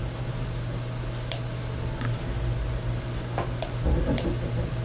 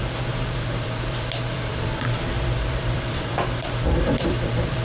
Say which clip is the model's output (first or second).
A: second